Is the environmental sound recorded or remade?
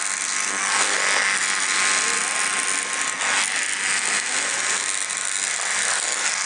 recorded